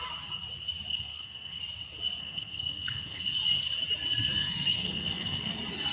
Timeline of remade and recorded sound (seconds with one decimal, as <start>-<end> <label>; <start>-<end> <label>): 0.0-0.9 recorded; 0.9-1.6 remade; 1.6-2.2 recorded; 2.2-3.2 remade; 3.2-4.4 recorded; 4.4-5.5 remade; 5.5-5.9 recorded